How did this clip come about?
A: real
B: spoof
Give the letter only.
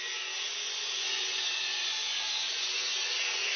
B